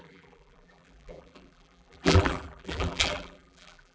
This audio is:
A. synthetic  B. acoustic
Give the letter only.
A